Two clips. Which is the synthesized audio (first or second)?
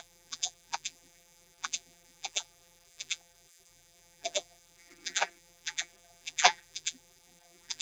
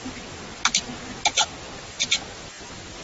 first